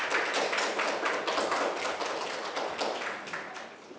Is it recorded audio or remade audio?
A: recorded